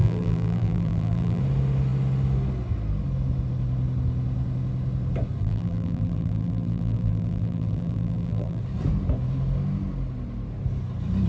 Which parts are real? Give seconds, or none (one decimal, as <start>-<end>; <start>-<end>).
1.4-5.4; 8.6-11.3